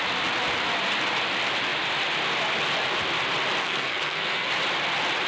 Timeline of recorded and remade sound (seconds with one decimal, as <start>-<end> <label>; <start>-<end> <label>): 0.0-3.6 recorded; 3.6-4.5 remade; 4.5-5.3 recorded